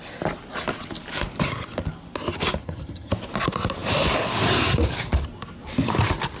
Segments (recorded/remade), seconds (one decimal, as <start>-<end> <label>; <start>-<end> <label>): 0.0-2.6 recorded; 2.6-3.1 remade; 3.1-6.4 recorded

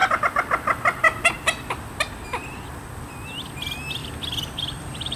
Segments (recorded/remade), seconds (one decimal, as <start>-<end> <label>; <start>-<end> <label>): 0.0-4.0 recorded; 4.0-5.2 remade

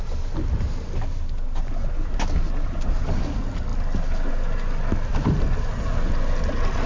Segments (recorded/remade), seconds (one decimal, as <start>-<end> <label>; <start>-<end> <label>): 0.0-6.9 recorded